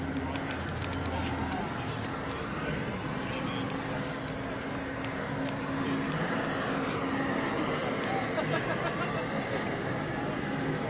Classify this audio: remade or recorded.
recorded